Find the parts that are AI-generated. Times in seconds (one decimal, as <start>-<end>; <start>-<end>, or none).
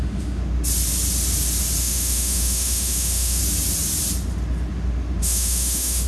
0.0-0.4; 1.8-3.4; 5.2-6.1